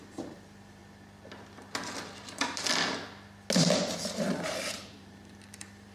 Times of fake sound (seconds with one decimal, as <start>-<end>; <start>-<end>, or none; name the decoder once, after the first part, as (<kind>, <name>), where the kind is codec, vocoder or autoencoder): 0.0-0.8 (vocoder, BigVGAN v2); 4.2-5.9